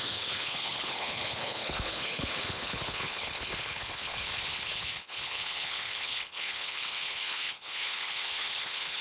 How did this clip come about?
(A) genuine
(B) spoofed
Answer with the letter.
B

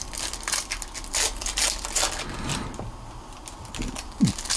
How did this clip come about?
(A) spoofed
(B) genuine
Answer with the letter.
B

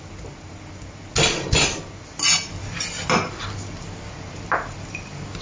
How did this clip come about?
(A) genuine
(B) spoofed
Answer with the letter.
A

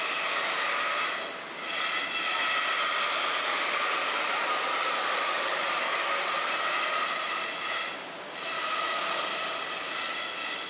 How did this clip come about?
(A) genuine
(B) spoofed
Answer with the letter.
A